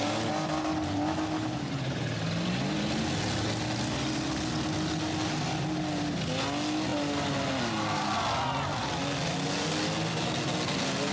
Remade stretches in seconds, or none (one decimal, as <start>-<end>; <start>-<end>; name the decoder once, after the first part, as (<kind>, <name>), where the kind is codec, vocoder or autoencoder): none